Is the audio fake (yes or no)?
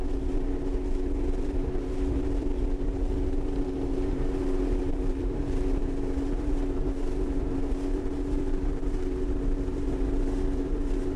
yes